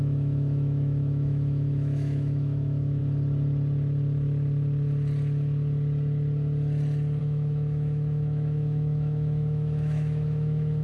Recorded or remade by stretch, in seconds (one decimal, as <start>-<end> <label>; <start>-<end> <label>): 0.0-3.0 remade; 3.0-7.2 recorded; 7.2-10.8 remade